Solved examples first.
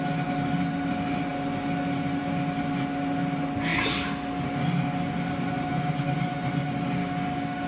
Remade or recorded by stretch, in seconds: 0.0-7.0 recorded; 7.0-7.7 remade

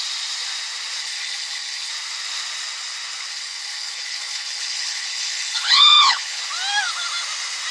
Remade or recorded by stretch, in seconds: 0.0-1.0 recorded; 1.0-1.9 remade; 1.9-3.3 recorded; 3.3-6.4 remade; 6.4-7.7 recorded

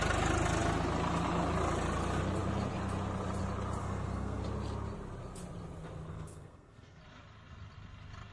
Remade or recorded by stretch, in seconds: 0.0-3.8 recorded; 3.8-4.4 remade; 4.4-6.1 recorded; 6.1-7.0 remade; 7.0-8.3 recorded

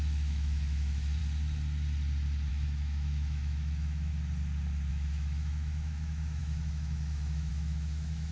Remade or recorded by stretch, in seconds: 0.0-1.2 remade; 1.2-2.5 recorded; 2.5-4.1 remade; 4.1-4.9 recorded; 4.9-8.3 remade